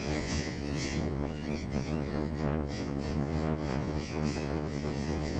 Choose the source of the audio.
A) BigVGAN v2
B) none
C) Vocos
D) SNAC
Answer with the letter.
C